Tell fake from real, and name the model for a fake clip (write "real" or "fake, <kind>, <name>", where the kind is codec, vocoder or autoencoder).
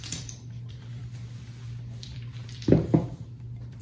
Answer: fake, vocoder, BigVGAN v2